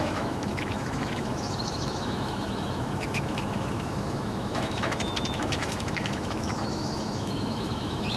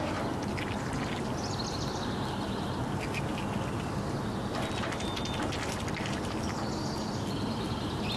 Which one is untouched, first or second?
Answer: second